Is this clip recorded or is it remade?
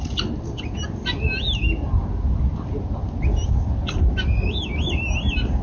recorded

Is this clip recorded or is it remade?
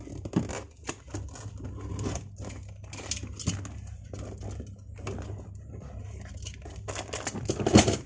recorded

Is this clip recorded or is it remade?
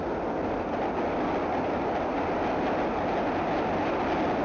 recorded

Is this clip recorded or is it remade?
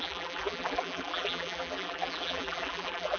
remade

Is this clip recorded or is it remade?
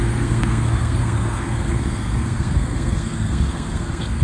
remade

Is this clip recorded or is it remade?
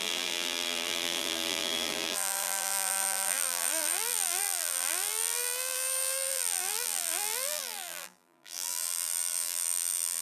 remade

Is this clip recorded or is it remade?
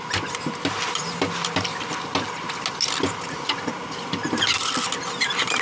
recorded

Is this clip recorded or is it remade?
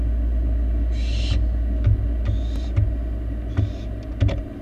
recorded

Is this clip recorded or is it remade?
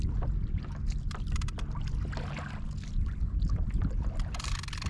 recorded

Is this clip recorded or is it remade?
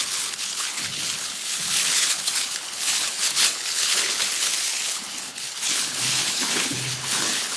remade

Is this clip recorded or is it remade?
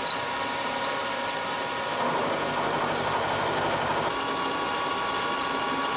recorded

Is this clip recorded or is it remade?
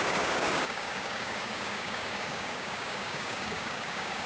remade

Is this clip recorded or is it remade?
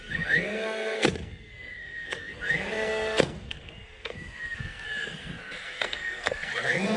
remade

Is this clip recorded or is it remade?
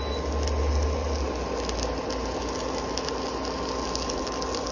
recorded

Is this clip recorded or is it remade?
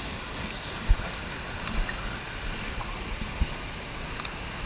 recorded